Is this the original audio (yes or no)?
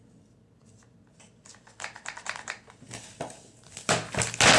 yes